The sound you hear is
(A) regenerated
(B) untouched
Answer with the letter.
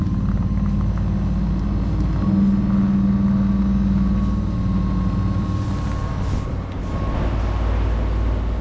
B